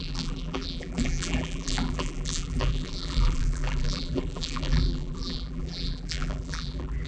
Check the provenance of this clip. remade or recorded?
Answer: remade